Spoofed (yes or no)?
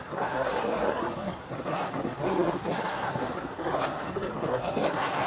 yes